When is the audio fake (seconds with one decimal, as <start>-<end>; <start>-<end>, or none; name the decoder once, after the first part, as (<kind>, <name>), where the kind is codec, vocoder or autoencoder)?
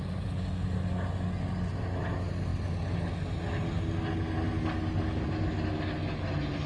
none